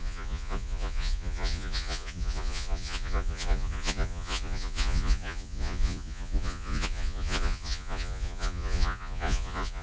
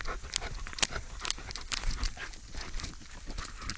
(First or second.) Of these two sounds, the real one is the second